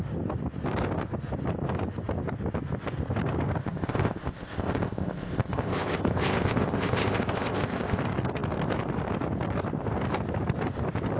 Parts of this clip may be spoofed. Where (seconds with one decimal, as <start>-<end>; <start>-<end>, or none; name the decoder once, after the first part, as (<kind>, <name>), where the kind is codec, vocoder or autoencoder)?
3.6-8.0 (codec, ZipCodec)